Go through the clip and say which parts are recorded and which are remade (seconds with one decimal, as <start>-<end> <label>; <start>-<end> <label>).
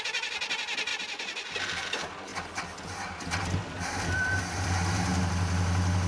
0.0-6.1 recorded